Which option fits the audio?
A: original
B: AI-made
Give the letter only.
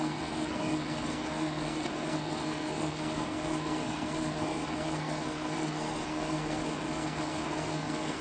B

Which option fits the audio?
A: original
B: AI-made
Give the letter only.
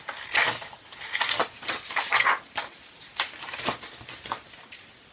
A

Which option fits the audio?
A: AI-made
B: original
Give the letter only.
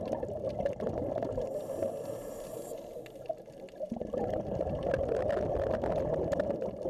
B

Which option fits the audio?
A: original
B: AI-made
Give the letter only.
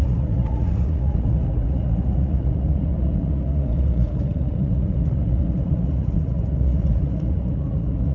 B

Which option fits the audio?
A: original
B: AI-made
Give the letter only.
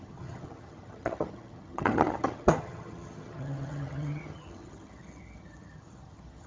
B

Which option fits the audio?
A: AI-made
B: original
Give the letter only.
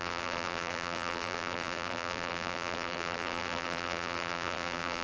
A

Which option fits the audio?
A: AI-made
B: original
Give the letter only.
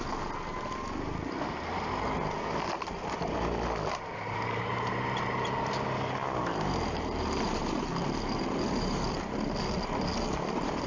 B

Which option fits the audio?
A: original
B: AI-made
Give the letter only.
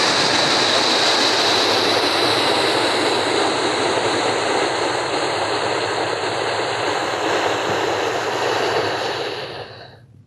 A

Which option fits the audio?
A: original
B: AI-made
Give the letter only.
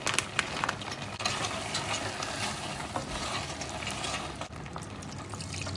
A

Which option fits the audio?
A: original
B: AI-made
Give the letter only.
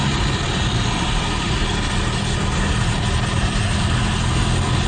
A